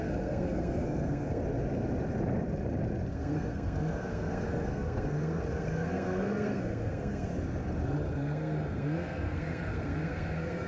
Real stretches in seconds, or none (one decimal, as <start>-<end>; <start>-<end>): 1.4-3.1; 7.3-8.1